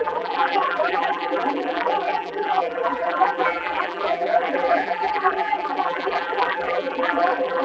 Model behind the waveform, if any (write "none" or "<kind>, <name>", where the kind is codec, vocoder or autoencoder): vocoder, BigVGAN v2